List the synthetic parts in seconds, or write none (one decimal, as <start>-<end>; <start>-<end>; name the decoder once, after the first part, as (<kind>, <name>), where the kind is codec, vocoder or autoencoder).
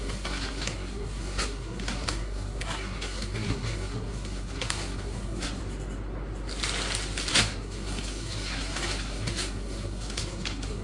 0.0-5.6 (codec, SNAC); 7.3-10.8